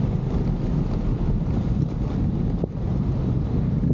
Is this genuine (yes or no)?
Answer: yes